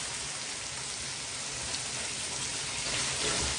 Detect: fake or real real